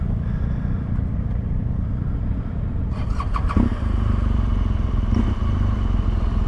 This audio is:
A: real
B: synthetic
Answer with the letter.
B